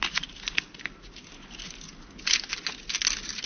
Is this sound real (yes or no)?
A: yes